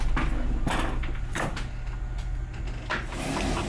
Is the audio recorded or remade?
recorded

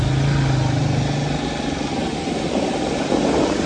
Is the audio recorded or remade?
recorded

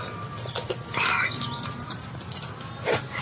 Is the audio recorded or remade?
recorded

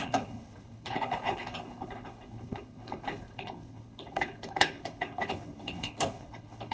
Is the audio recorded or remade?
remade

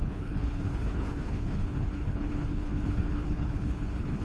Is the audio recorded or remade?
remade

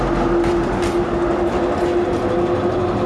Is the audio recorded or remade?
recorded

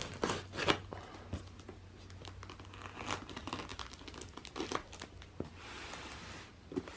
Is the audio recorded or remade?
recorded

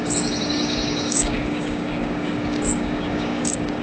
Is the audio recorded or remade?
remade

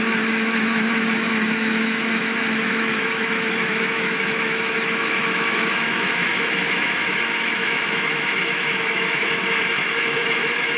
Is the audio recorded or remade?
remade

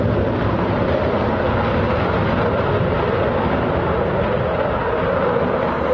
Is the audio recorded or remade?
recorded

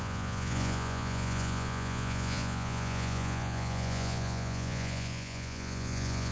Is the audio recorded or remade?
remade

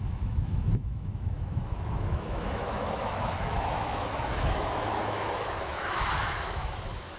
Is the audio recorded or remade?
remade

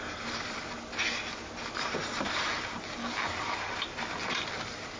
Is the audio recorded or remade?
recorded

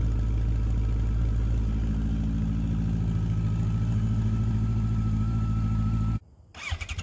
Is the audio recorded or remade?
recorded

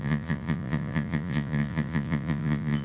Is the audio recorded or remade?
remade